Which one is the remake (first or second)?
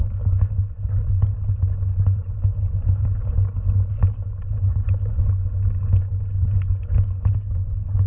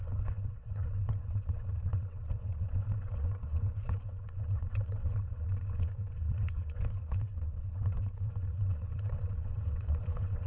second